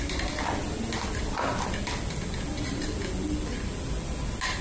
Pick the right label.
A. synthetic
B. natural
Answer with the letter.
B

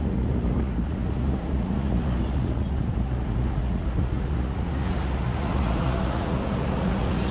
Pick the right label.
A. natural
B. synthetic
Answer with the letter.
B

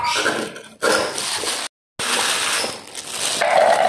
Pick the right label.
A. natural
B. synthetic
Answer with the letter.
A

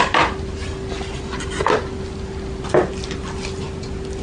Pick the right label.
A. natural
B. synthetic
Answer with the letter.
A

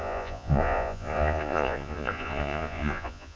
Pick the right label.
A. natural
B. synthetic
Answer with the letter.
B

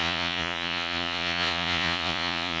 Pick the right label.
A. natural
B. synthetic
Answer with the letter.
B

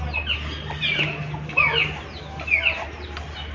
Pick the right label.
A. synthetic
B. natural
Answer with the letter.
B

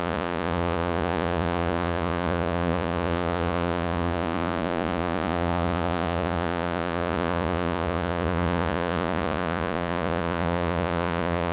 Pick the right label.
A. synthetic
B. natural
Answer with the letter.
A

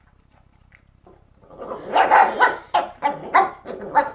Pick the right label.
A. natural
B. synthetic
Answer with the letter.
A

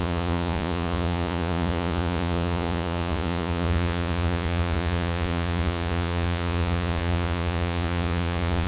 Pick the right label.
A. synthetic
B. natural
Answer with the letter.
A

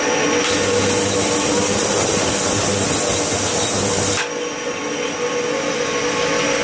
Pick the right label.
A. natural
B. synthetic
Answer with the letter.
A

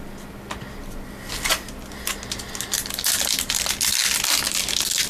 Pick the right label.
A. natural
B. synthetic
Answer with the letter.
A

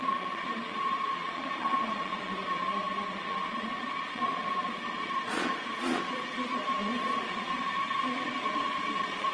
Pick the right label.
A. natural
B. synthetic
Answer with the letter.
B